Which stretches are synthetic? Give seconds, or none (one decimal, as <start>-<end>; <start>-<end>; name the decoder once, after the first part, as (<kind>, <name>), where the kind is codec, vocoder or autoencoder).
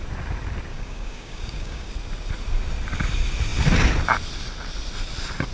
0.7-1.9 (codec, DAC)